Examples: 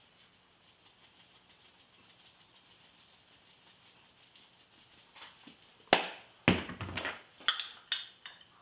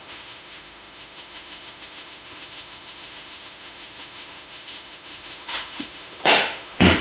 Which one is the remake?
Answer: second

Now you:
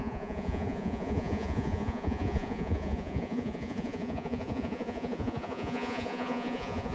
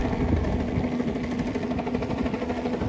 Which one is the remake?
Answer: first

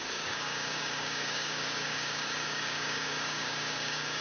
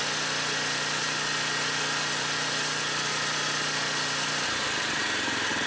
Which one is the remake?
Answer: first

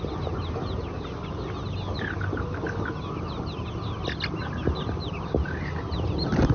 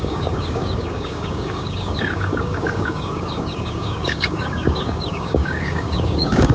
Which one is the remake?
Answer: second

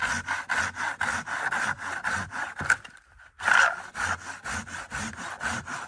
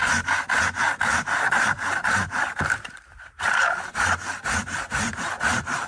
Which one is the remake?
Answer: second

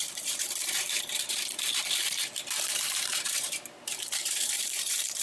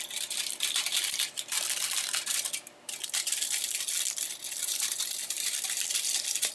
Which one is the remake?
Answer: first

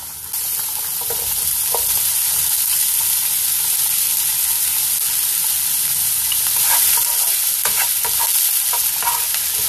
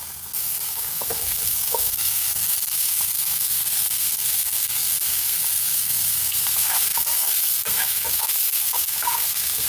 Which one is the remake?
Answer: second